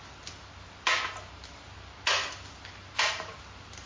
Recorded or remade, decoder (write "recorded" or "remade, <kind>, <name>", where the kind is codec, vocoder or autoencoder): recorded